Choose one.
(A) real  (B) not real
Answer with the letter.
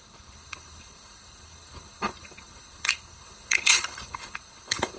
B